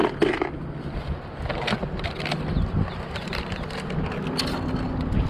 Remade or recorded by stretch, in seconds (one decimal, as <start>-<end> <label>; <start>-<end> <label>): 0.0-5.3 recorded